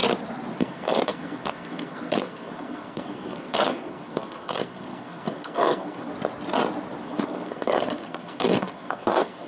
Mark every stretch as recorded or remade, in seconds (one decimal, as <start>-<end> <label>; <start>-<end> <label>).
0.0-0.6 recorded; 0.6-6.1 remade; 6.1-7.0 recorded; 7.0-9.5 remade